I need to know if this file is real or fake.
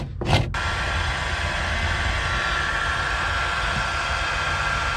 real